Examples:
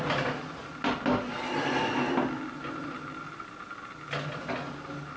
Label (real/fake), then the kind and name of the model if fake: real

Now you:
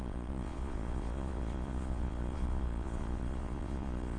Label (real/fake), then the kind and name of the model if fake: fake, vocoder, Vocos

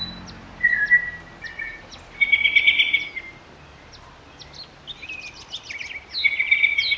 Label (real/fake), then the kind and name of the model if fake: real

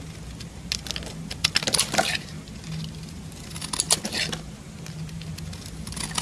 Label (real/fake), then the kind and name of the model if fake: real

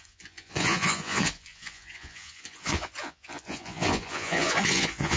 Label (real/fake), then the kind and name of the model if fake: fake, vocoder, Vocos